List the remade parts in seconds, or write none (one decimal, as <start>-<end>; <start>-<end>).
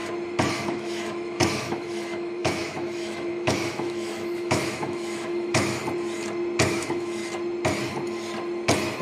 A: 0.5-5.8; 6.7-7.2